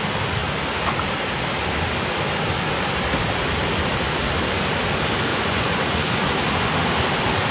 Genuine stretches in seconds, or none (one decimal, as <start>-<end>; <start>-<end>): 0.0-5.3; 6.7-7.5